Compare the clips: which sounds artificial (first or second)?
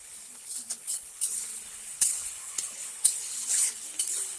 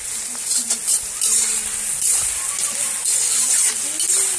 first